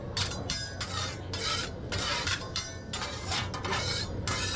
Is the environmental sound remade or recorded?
recorded